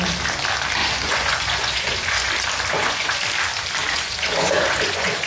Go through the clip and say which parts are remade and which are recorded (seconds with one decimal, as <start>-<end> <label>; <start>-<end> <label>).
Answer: 0.0-0.8 recorded; 0.8-2.3 remade; 2.3-2.7 recorded; 2.7-3.2 remade; 3.2-3.8 recorded; 3.8-5.3 remade

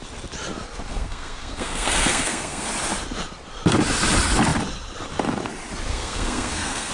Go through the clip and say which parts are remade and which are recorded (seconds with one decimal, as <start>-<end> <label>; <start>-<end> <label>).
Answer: 0.0-0.9 recorded; 0.9-2.7 remade; 2.7-5.9 recorded; 5.9-6.9 remade

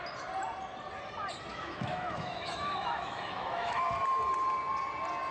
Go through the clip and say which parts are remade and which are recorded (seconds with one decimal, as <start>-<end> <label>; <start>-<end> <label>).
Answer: 0.0-1.5 recorded; 1.5-3.9 remade; 3.9-5.3 recorded

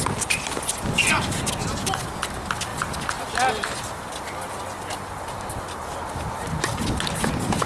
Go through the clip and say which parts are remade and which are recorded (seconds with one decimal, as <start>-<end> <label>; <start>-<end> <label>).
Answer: 0.0-7.7 recorded

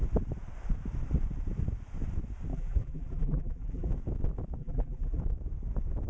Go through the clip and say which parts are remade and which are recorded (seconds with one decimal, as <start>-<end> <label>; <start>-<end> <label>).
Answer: 0.0-2.5 recorded; 2.5-3.9 remade; 3.9-4.6 recorded; 4.6-5.2 remade; 5.2-6.1 recorded

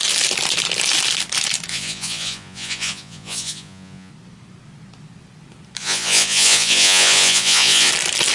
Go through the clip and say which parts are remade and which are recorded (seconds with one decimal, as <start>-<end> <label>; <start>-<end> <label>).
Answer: 0.0-1.7 recorded; 1.7-4.1 remade; 4.1-5.8 recorded; 5.8-7.9 remade; 7.9-8.3 recorded